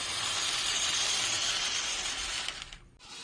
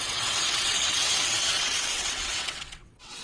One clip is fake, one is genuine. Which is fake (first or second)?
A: second